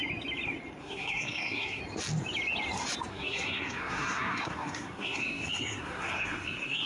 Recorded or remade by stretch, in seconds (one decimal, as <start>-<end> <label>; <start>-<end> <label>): 0.0-0.8 recorded; 0.8-1.8 remade; 1.8-3.1 recorded; 3.1-6.9 remade